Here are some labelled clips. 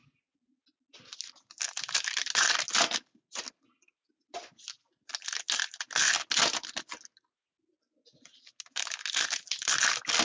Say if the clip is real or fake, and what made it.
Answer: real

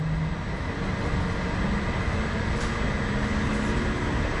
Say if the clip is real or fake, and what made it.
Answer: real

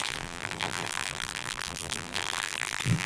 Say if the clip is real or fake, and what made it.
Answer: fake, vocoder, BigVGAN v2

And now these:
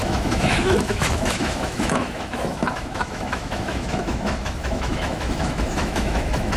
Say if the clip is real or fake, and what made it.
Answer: fake, autoencoder, DAC-VAE